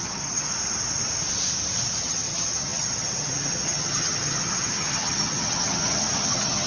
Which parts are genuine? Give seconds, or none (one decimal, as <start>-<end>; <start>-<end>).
0.5-2.0

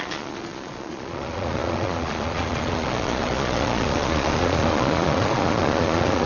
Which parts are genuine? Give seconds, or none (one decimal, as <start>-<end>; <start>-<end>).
none

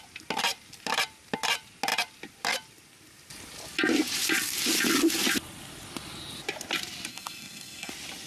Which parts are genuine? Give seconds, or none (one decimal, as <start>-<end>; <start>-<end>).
0.0-7.1; 7.9-8.3

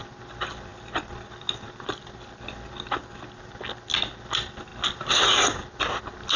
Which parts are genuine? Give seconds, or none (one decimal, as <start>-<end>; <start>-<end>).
0.0-6.4

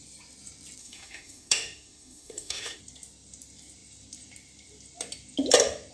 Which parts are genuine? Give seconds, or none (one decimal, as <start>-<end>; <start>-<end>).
0.0-0.8; 2.8-5.9

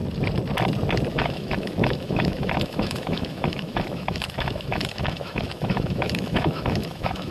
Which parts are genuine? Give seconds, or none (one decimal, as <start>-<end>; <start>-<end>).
0.0-1.1

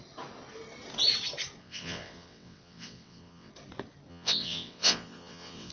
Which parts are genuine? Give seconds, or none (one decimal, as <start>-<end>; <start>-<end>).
0.0-1.6; 3.5-4.1

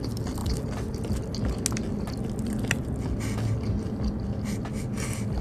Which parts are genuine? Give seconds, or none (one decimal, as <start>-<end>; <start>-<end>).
0.0-5.4